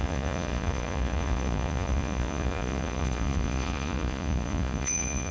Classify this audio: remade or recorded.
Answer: remade